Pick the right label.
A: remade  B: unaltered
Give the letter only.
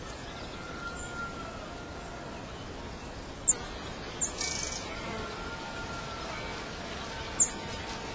B